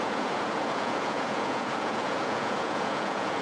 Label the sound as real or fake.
fake